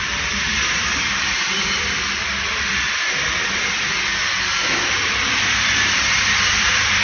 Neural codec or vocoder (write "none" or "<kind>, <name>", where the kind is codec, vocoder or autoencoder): vocoder, BigVGAN v2